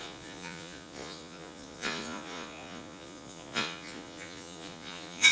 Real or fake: fake